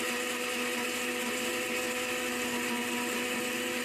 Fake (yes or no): no